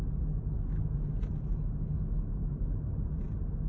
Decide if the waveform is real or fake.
real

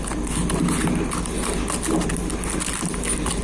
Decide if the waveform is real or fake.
real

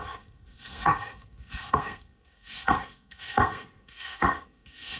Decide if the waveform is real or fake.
fake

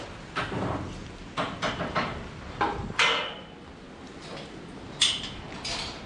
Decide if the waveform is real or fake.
real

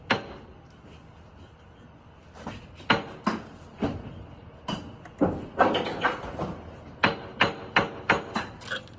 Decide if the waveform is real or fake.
real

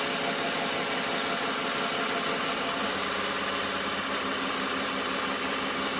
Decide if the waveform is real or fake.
real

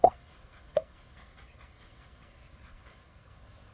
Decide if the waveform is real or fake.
fake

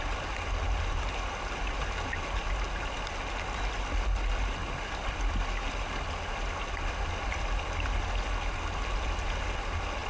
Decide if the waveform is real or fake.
real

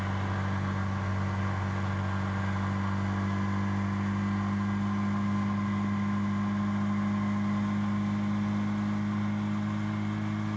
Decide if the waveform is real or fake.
real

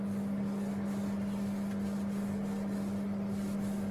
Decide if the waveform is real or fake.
real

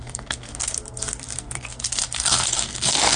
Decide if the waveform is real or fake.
fake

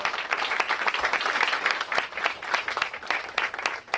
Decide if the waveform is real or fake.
real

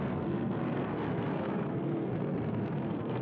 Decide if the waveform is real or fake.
fake